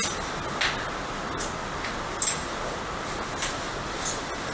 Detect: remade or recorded recorded